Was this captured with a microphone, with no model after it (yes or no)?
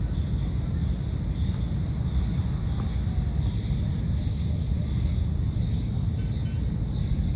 yes